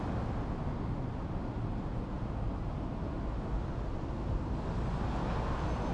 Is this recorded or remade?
recorded